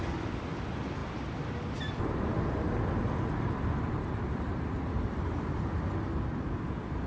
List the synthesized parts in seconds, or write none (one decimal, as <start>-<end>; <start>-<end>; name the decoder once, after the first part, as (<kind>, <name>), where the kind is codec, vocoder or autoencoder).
none